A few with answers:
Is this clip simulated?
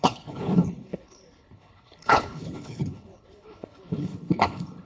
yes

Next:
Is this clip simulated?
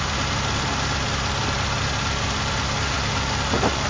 no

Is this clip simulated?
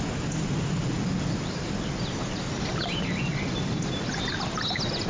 no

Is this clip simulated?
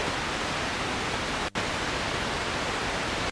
no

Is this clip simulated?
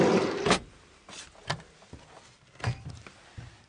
no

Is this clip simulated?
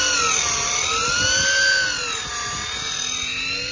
no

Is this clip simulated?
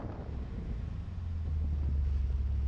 no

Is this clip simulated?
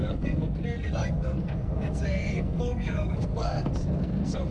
yes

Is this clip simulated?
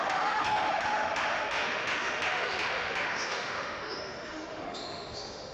yes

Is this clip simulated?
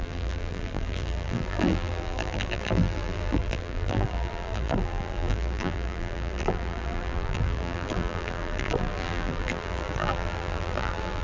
yes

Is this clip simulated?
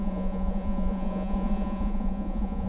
yes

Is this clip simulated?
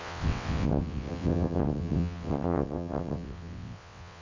yes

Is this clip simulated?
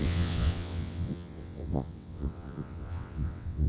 yes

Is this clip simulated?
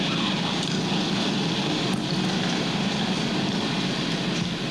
no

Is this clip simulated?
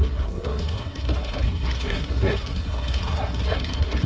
yes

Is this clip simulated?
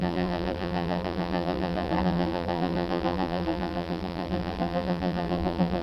yes